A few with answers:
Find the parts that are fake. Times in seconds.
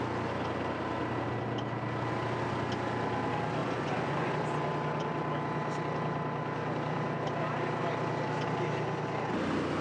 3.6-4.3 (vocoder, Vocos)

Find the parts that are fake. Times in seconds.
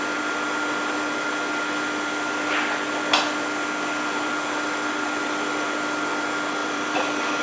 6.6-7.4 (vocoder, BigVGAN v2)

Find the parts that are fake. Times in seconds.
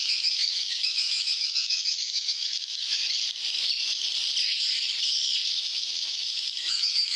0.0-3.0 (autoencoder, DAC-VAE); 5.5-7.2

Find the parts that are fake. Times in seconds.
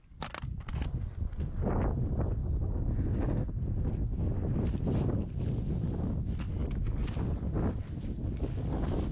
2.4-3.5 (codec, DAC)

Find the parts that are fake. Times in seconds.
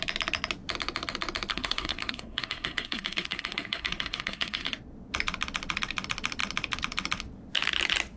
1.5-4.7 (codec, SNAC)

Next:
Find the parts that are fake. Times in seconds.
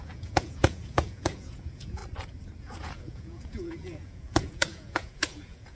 0.0-2.0 (vocoder, Vocos); 2.6-5.7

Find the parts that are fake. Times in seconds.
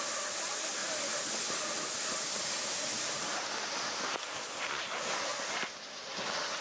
0.8-4.8 (vocoder, BigVGAN v2)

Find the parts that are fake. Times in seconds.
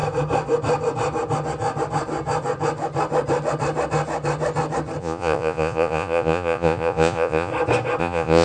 5.0-7.5 (vocoder, Vocos); 8.0-8.4